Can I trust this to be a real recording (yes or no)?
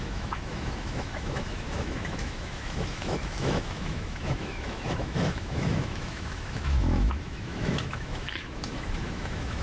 no